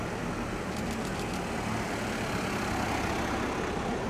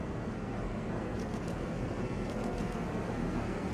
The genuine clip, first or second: first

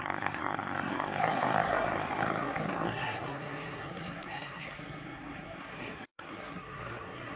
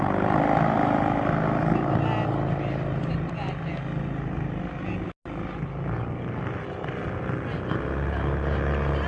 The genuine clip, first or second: second